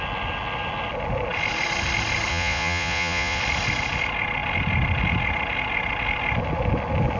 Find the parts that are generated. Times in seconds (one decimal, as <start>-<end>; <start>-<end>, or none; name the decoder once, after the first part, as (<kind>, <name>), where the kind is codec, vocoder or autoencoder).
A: 2.3-3.4 (vocoder, Vocos)